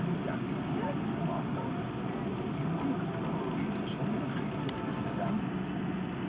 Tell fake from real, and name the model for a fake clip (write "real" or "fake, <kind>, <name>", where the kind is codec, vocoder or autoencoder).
real